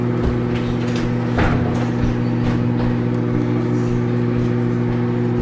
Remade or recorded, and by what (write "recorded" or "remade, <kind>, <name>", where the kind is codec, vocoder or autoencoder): recorded